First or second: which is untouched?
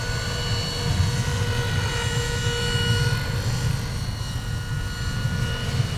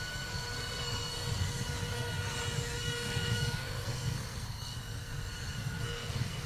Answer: first